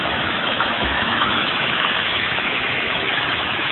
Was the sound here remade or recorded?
remade